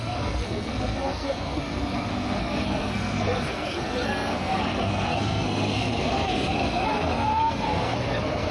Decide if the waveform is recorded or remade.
remade